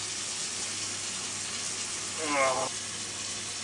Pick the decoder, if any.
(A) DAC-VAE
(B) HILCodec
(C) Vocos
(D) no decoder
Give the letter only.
D